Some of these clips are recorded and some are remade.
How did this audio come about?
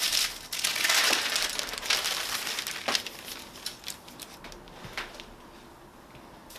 recorded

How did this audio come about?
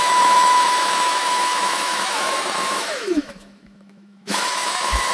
remade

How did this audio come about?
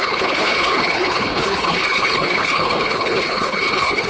remade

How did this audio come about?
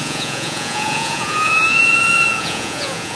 remade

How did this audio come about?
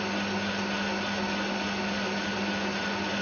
recorded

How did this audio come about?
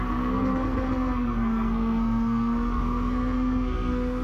remade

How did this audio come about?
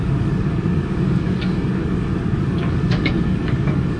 remade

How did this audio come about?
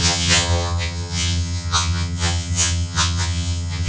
remade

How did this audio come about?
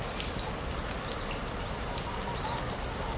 recorded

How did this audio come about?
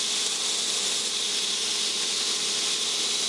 recorded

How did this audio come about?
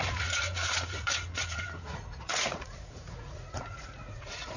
remade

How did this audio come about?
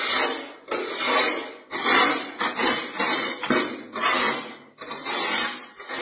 recorded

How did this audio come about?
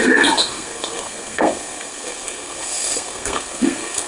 remade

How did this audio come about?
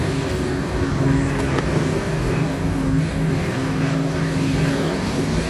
remade